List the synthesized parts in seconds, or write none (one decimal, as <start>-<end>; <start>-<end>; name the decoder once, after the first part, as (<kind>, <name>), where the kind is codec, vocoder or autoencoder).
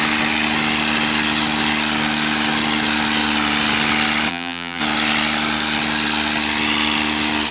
4.3-4.8 (vocoder, BigVGAN v2)